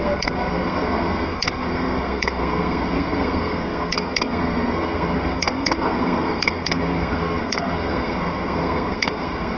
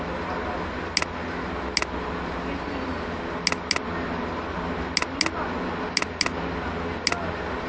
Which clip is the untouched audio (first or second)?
second